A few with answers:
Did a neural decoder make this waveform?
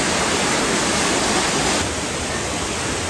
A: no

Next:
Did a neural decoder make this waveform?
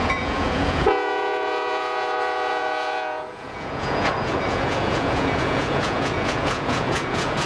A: yes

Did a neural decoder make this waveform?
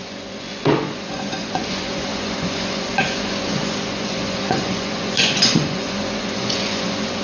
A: yes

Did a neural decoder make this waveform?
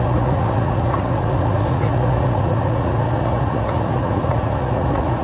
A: yes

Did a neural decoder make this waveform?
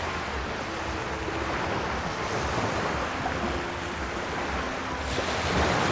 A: no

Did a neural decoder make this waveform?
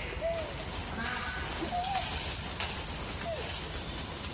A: no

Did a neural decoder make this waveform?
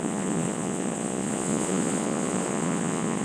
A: yes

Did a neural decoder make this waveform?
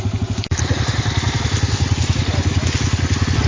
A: no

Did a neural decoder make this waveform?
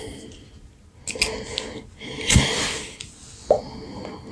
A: no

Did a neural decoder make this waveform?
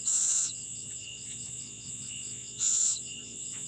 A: yes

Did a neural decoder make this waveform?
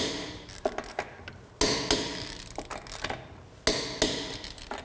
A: no